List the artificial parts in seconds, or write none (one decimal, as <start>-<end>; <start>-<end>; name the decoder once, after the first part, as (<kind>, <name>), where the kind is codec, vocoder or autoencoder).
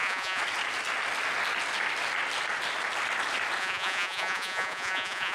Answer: 0.0-0.4 (vocoder, Vocos); 3.6-5.3